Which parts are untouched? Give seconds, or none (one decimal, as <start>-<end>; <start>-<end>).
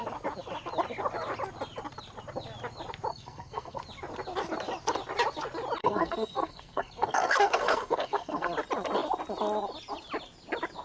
0.0-3.1; 3.8-5.8; 8.5-10.8